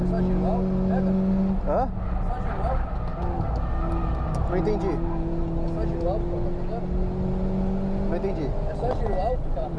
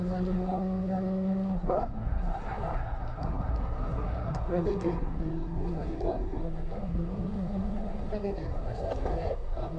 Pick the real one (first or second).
first